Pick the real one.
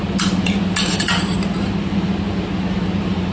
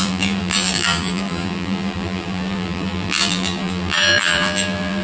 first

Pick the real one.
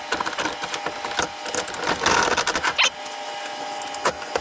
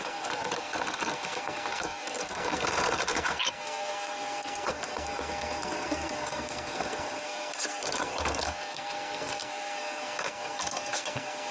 first